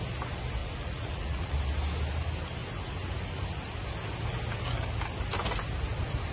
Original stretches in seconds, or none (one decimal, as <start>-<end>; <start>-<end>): 0.0-0.6; 1.6-6.3